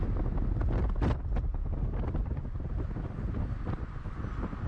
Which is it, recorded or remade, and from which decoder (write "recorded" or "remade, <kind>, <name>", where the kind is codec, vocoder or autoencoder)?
recorded